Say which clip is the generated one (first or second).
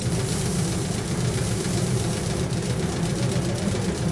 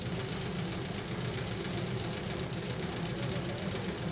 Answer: first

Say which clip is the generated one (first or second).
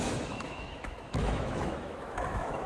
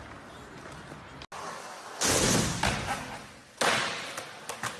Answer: first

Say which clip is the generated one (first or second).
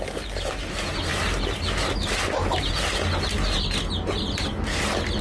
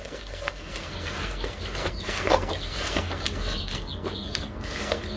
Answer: second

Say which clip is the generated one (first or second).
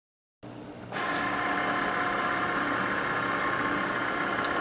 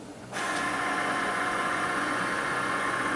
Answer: second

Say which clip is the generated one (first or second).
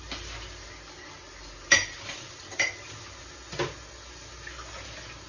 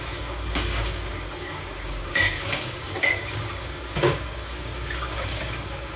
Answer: second